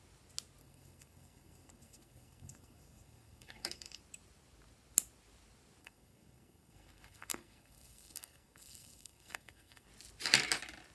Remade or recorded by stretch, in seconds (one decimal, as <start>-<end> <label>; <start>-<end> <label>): 0.0-0.6 recorded; 0.6-4.0 remade; 4.0-5.8 recorded; 5.8-9.9 remade; 9.9-10.9 recorded